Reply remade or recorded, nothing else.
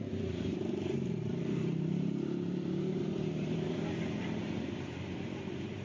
remade